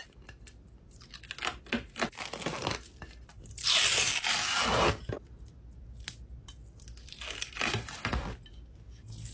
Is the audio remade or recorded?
recorded